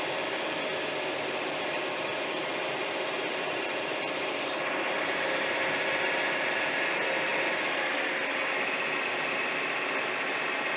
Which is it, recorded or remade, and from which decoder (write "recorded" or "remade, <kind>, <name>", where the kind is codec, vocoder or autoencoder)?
remade, vocoder, BigVGAN v2